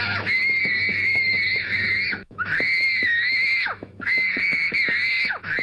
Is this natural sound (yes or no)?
no